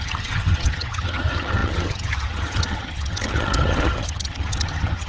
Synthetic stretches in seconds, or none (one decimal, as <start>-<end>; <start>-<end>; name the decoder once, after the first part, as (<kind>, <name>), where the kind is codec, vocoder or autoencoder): 0.0-5.1 (vocoder, HiFi-GAN)

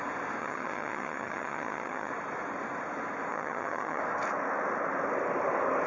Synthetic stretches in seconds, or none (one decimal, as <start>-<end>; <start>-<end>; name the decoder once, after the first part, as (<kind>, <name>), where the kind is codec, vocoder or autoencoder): 0.4-2.1 (vocoder, HiFi-GAN); 3.3-4.0

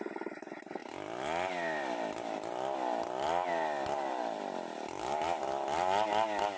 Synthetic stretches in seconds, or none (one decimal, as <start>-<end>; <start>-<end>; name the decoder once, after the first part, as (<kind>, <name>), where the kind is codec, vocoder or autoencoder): none

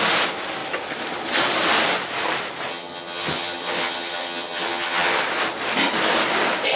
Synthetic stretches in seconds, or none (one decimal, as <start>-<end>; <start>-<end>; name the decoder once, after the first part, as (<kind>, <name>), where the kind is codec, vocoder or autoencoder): 2.7-5.2 (vocoder, HiFi-GAN)

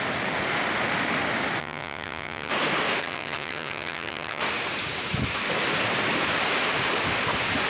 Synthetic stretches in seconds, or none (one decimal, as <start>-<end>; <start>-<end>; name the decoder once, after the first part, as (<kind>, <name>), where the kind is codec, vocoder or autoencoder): 1.6-2.5 (vocoder, HiFi-GAN); 3.0-4.4

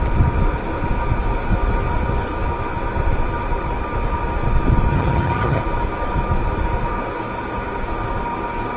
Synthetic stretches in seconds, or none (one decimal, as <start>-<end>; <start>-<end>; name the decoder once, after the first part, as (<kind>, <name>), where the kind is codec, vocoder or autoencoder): 4.9-5.6 (vocoder, HiFi-GAN)